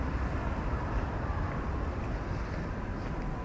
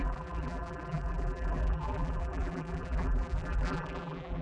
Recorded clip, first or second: first